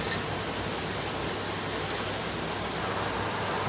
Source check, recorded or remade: recorded